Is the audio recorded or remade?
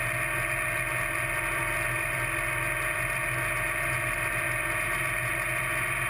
recorded